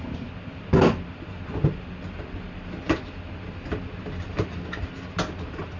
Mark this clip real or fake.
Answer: real